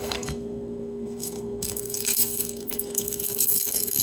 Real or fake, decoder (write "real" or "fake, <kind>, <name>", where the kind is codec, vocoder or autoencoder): fake, codec, SNAC